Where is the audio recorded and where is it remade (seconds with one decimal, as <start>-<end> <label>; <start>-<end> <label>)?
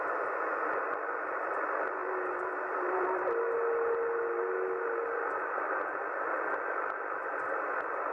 0.0-8.1 recorded